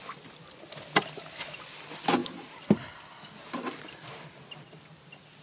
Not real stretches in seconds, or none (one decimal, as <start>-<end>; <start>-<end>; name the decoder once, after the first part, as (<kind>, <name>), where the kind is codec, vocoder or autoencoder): none